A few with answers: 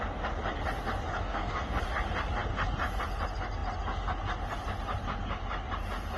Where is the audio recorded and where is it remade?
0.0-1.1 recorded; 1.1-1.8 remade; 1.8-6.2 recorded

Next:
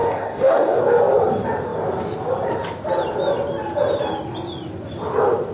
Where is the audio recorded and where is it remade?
0.0-0.8 remade; 0.8-5.5 recorded

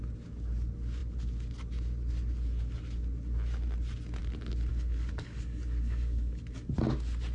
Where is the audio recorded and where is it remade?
0.0-4.7 recorded; 4.7-6.7 remade; 6.7-7.3 recorded

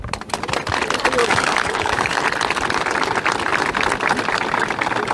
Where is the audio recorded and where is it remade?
0.0-1.2 recorded; 1.2-2.2 remade; 2.2-5.1 recorded